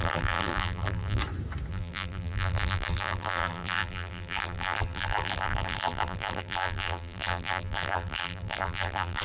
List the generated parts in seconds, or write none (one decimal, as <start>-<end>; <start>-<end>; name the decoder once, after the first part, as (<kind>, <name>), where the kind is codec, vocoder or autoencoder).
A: 0.0-1.2 (vocoder, BigVGAN v2); 1.7-9.2